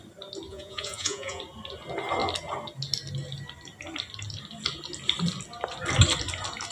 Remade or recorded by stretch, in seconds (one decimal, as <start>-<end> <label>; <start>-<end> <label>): 0.0-0.5 recorded; 0.5-1.4 remade; 1.4-6.7 recorded